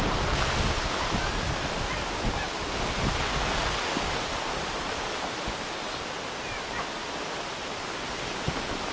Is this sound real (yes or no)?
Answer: yes